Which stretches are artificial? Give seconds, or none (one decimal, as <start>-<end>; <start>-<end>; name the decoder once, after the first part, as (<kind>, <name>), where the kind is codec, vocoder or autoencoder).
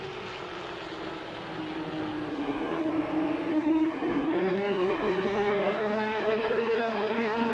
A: 2.3-2.9 (codec, SNAC); 3.5-7.5